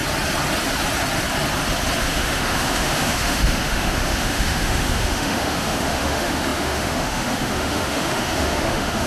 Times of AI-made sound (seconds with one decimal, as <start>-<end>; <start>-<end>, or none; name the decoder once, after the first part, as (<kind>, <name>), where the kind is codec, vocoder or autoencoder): 2.0-9.1 (autoencoder, DAC-VAE)